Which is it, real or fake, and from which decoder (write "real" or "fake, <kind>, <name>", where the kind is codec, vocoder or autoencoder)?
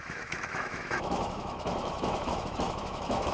fake, autoencoder, DAC-VAE